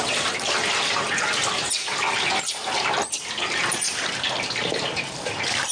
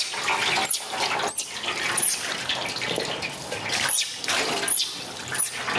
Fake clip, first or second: first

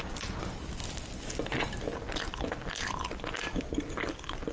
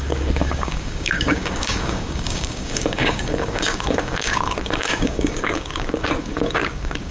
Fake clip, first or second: second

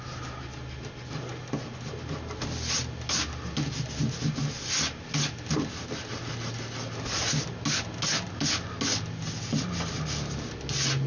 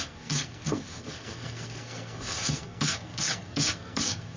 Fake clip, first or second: second